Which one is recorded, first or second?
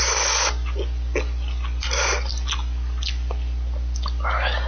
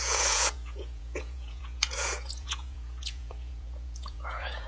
first